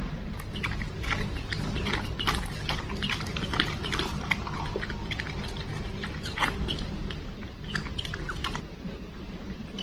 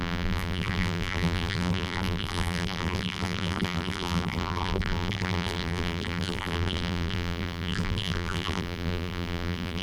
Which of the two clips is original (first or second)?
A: first